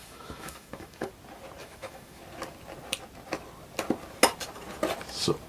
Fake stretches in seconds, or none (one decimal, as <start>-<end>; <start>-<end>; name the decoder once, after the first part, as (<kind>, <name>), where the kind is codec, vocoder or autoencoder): 0.0-1.1 (autoencoder, DAC-VAE); 1.6-2.2